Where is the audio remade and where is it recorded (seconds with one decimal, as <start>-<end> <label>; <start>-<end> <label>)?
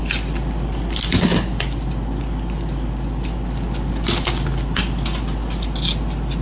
0.0-6.4 recorded